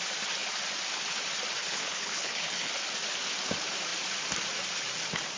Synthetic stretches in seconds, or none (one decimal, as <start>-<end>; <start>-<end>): 1.6-2.7